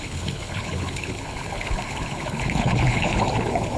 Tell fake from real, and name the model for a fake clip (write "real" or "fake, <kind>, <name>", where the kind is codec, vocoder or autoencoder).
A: fake, codec, HILCodec